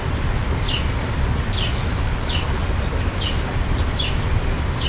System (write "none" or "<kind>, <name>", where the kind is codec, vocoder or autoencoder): none